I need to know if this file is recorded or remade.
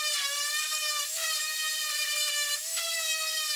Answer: remade